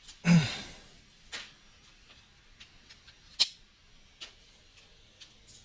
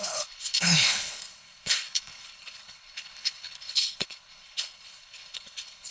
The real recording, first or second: first